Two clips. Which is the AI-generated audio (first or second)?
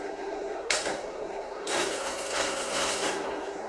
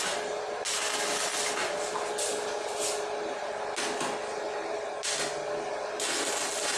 first